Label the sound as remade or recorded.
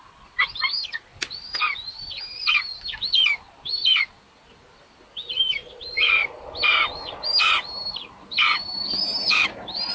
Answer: recorded